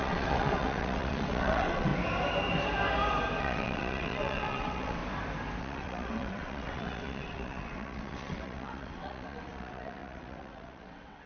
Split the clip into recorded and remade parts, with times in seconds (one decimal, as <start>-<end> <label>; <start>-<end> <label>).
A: 0.0-1.9 remade; 1.9-3.4 recorded; 3.4-5.0 remade; 5.0-5.6 recorded; 5.6-11.3 remade